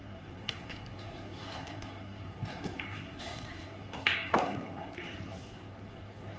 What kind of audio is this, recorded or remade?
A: remade